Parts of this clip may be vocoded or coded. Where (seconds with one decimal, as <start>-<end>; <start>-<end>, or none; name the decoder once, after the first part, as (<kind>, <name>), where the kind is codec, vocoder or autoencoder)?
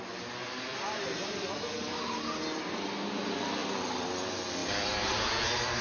0.4-1.6 (vocoder, BigVGAN v2); 4.6-5.8